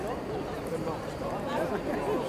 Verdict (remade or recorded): recorded